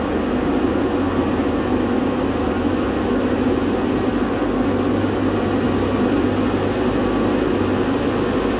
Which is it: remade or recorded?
recorded